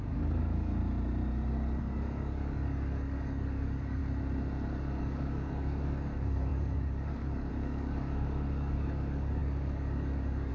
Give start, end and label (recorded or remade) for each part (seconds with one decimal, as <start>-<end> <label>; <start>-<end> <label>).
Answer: 0.0-0.8 remade; 0.8-1.8 recorded; 1.8-4.0 remade; 4.0-5.0 recorded; 5.0-10.5 remade